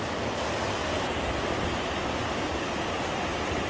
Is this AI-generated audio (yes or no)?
no